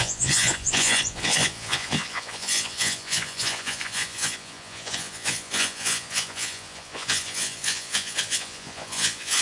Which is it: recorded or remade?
remade